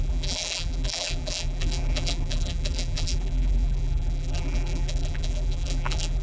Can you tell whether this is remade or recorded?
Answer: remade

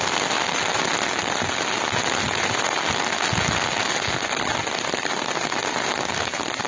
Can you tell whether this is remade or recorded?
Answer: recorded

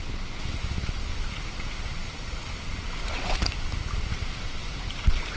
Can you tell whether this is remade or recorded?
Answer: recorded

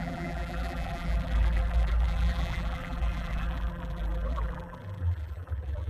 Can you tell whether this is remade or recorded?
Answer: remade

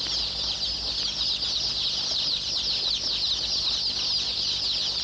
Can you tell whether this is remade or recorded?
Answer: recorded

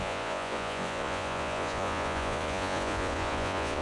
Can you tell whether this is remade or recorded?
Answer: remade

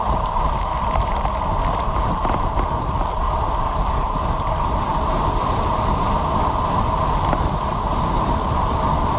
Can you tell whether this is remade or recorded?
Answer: recorded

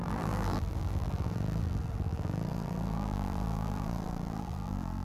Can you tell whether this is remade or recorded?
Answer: remade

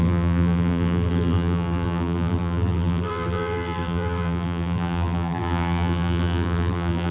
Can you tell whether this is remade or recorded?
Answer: remade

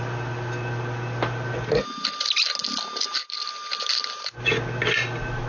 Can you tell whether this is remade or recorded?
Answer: recorded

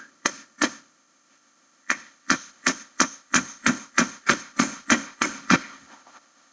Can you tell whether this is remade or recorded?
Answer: remade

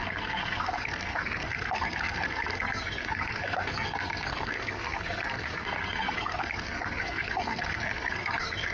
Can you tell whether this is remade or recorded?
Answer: remade